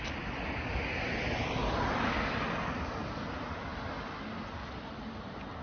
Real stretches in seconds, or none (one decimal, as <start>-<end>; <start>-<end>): 0.0-5.6